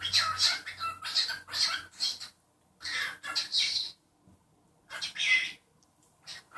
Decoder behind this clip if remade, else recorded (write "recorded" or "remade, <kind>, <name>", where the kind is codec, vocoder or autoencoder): recorded